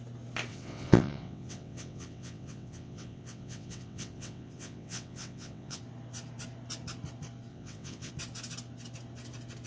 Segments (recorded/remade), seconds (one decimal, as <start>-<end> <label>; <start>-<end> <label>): 0.0-0.5 recorded; 0.5-5.8 remade; 5.8-7.5 recorded; 7.5-8.1 remade; 8.1-9.7 recorded